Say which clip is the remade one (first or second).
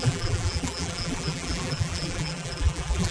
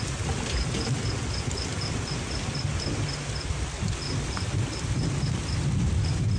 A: first